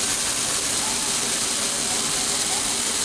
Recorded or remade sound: recorded